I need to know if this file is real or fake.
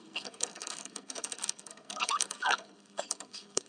fake